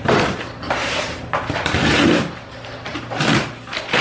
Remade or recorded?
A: remade